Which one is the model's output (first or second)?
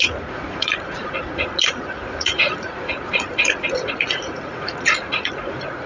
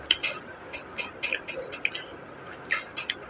first